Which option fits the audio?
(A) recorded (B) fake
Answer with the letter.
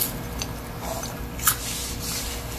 A